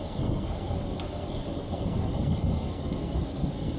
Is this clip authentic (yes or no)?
no